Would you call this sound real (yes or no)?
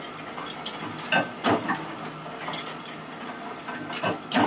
yes